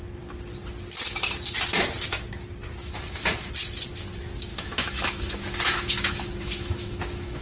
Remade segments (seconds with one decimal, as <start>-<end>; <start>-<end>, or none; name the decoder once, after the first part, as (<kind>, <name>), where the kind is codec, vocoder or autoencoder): 2.8-3.5 (autoencoder, DAC-VAE); 4.5-7.4